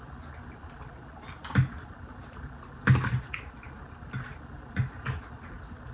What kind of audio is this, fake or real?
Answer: real